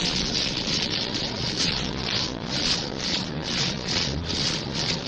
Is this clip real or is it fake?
fake